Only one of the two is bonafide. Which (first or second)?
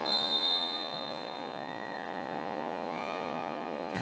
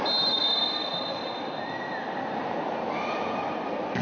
second